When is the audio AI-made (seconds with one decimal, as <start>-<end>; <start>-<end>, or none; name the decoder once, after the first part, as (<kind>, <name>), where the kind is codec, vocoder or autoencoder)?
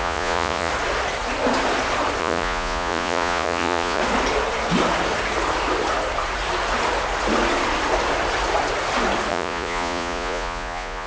0.0-0.7 (vocoder, Vocos); 2.2-4.0; 9.3-11.1